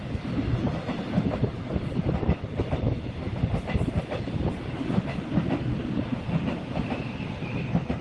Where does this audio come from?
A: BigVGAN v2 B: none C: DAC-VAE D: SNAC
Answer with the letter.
B